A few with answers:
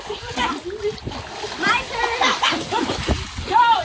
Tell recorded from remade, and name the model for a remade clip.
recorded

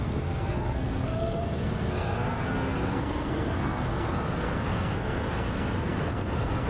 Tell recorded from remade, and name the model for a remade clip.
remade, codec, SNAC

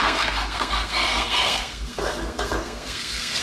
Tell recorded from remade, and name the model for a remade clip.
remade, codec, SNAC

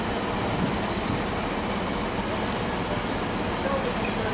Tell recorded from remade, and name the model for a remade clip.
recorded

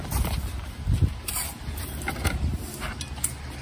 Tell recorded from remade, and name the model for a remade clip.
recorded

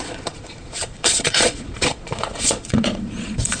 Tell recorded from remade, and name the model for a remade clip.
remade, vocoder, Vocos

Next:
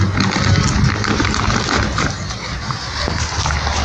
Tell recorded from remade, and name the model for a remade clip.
recorded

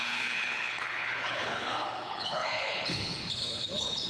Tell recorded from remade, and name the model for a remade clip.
remade, codec, HILCodec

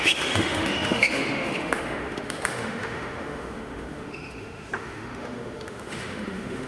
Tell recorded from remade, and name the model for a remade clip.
remade, autoencoder, DAC-VAE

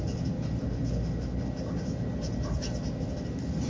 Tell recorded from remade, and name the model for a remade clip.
recorded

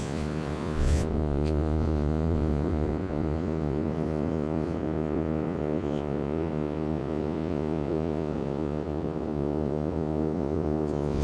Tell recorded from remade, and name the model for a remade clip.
remade, vocoder, Vocos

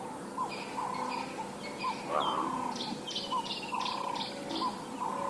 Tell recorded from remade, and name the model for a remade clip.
recorded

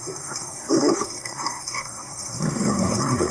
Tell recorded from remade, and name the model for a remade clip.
remade, codec, SNAC